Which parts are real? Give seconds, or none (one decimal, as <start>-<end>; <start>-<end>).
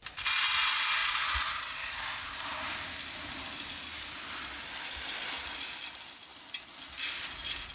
0.0-7.7